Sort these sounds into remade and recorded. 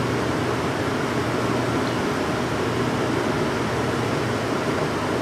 recorded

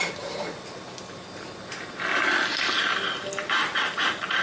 recorded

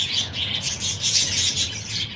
remade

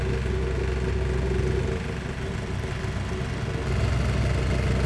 recorded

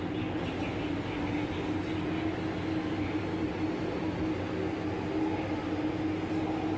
recorded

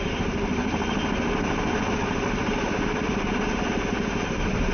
recorded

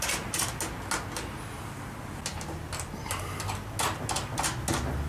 recorded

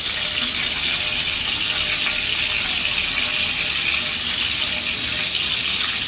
recorded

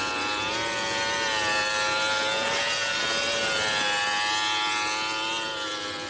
recorded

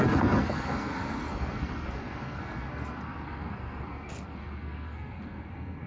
remade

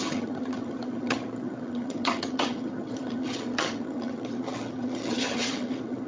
remade